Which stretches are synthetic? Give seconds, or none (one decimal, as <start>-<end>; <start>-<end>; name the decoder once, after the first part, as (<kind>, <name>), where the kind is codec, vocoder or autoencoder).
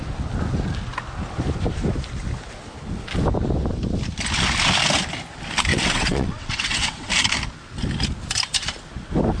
5.7-7.1 (vocoder, WaveNeXt)